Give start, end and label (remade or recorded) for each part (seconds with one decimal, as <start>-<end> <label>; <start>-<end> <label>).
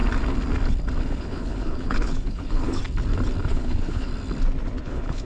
0.0-1.0 recorded; 1.0-2.8 remade; 2.8-3.4 recorded; 3.4-4.1 remade; 4.1-4.8 recorded; 4.8-5.3 remade